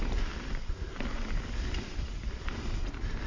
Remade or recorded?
recorded